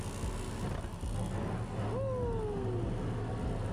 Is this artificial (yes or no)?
no